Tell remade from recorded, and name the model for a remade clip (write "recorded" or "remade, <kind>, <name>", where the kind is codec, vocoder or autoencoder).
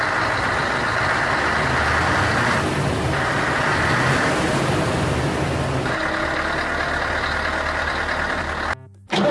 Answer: recorded